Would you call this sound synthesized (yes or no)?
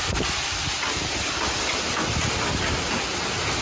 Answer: no